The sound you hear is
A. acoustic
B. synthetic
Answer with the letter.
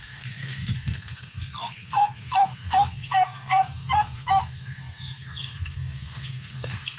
B